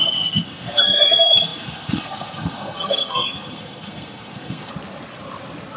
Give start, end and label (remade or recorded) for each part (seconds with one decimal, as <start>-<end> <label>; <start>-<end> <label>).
0.0-4.7 remade; 4.7-5.8 recorded